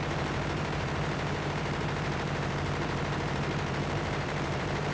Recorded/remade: remade